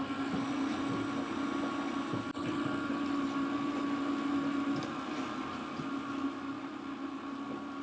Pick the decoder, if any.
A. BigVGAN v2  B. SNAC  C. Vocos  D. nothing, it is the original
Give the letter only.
D